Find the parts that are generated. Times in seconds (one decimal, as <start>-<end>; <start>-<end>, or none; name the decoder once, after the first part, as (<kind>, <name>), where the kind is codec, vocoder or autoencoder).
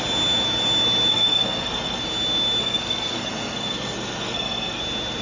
1.1-2.0 (codec, SNAC); 2.6-4.8